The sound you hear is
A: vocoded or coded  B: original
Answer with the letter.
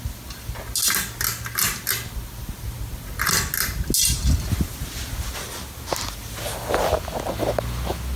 B